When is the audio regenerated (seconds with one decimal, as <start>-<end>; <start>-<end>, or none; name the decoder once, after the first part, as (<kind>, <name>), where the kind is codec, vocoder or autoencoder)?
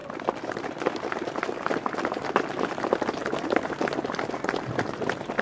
none